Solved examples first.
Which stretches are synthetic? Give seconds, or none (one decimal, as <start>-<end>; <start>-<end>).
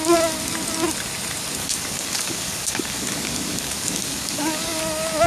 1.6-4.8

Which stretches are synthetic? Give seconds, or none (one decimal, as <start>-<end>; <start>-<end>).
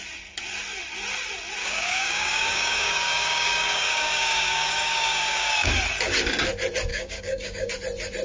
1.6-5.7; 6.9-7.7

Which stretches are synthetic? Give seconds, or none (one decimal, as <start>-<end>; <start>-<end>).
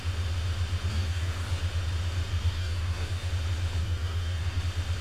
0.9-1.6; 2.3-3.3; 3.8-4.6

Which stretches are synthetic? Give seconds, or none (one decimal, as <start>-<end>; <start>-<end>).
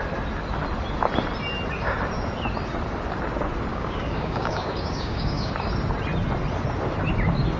3.7-5.5